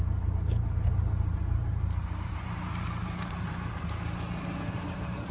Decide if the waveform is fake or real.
fake